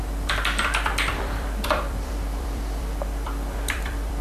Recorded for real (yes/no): no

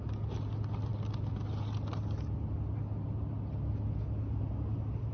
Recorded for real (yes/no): yes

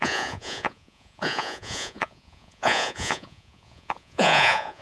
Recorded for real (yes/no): no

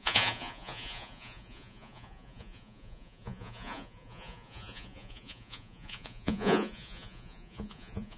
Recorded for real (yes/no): no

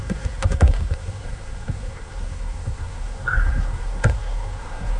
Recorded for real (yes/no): no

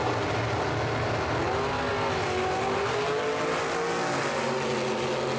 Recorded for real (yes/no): yes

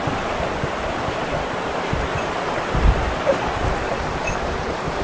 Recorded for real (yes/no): yes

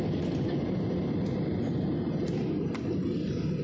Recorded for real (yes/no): yes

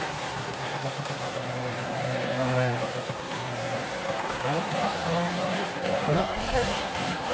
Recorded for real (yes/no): no